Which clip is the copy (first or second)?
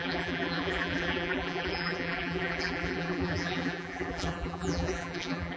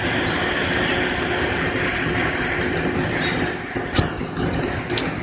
first